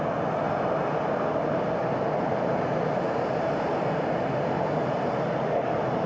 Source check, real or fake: real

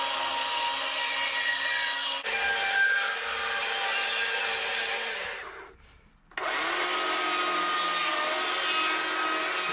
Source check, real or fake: real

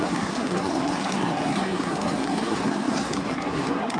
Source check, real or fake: fake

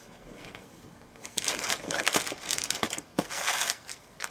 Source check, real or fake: fake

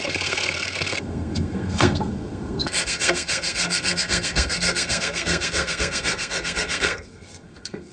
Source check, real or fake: fake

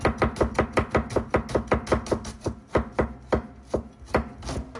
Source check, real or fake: real